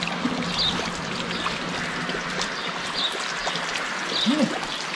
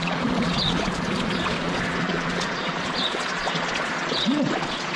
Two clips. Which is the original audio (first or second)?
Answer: first